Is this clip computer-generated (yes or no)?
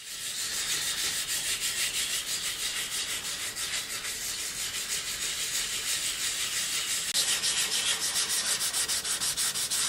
no